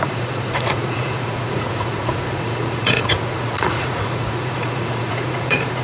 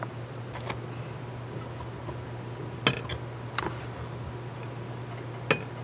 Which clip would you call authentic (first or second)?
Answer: second